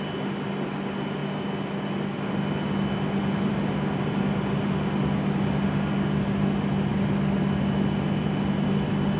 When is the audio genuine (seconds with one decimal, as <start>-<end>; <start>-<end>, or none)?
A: 0.0-9.2

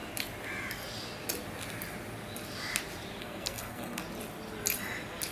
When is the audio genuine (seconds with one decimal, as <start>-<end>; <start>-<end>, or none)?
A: 0.0-3.2; 4.0-5.3

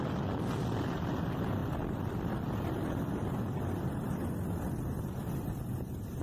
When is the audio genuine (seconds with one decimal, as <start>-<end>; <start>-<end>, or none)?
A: 0.0-6.2

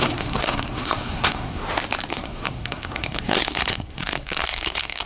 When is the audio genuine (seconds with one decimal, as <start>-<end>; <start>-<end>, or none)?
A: 1.6-2.1

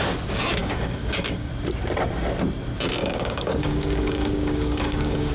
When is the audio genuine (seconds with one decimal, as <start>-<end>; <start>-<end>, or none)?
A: 0.0-0.6; 1.5-3.0

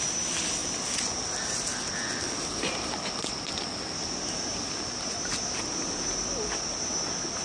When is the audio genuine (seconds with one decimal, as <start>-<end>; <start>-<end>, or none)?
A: 0.0-7.4